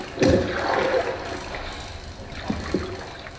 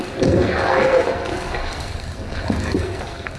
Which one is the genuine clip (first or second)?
first